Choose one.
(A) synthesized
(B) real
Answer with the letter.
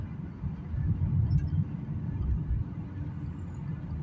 B